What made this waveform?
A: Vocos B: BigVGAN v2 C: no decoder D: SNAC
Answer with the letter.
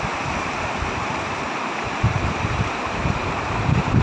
B